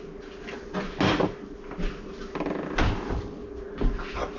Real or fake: real